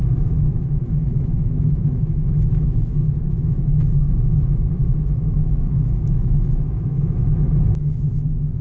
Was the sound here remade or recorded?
remade